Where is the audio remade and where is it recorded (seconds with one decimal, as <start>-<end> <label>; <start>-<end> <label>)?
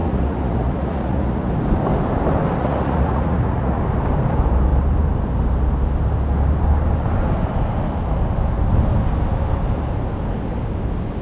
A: 0.0-1.5 remade; 1.5-2.6 recorded; 2.6-3.8 remade; 3.8-11.2 recorded